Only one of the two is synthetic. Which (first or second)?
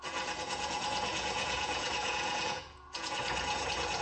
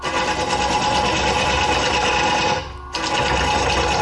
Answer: first